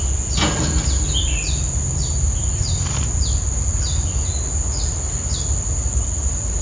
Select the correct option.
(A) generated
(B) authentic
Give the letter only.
B